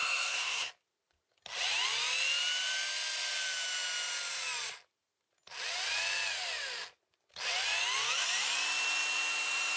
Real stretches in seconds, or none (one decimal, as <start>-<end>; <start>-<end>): 0.7-9.8